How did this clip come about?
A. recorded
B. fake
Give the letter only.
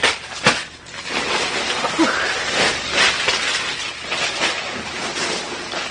A